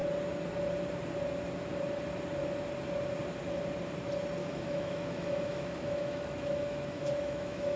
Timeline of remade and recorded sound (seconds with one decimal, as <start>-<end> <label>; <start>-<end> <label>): 0.0-4.4 recorded; 4.4-7.8 remade